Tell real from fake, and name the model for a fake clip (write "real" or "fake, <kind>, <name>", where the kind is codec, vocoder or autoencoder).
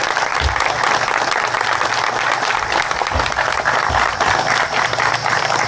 real